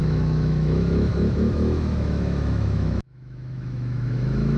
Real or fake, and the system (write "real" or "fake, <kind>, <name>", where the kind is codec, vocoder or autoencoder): fake, autoencoder, DAC-VAE